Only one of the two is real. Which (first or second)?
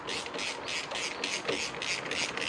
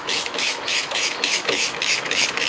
first